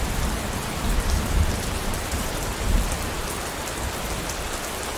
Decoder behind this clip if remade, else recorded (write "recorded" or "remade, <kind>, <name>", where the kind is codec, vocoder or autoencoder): remade, vocoder, BigVGAN v2